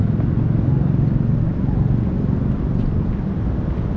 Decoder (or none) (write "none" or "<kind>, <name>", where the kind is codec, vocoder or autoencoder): none